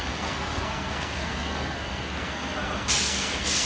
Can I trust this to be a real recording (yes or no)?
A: no